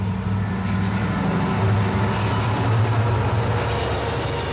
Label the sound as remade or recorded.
recorded